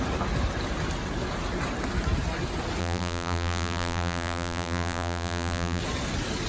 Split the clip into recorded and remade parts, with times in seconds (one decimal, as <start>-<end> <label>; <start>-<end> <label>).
0.0-2.8 recorded; 2.8-5.8 remade; 5.8-6.5 recorded